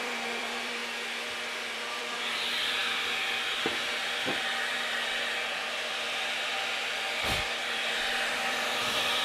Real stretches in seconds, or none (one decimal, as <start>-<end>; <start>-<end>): 0.8-1.4